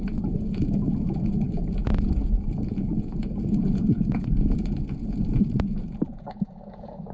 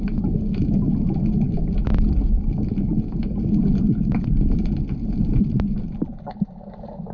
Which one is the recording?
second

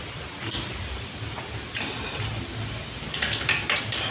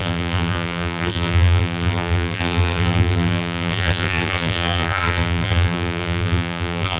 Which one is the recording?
first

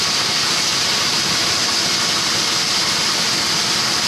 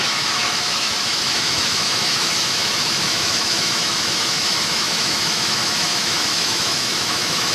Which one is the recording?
first